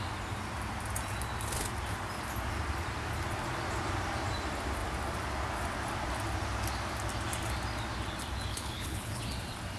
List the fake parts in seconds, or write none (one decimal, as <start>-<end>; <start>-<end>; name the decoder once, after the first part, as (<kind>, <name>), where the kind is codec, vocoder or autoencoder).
8.5-9.2 (codec, HILCodec)